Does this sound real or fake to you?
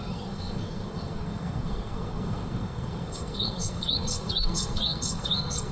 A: fake